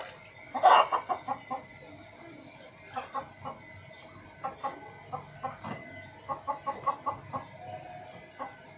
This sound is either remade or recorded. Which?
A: recorded